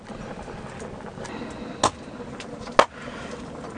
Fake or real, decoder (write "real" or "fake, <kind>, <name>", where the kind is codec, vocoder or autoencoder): real